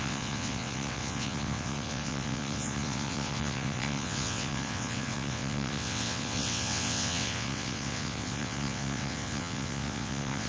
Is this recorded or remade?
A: remade